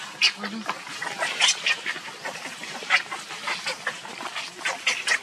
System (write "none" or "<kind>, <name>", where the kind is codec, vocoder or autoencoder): none